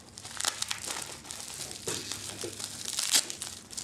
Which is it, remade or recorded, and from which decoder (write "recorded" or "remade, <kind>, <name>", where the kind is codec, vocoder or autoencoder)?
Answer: recorded